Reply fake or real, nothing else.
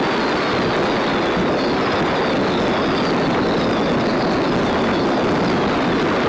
real